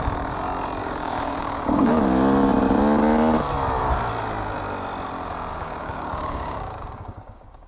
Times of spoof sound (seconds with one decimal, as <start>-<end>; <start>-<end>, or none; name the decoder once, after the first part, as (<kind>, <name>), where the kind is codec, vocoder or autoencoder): 0.8-1.9 (codec, DAC); 5.5-7.7